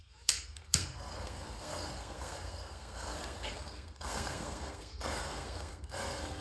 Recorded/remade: remade